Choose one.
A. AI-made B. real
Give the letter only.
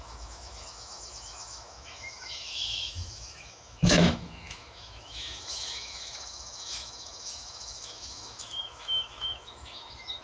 A